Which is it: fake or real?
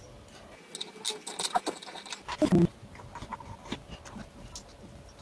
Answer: real